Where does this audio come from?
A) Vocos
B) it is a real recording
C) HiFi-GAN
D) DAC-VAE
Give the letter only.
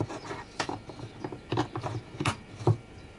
B